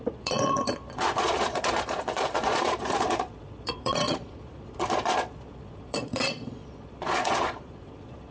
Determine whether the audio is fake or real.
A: fake